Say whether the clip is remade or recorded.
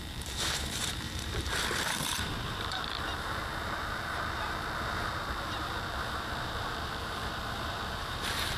remade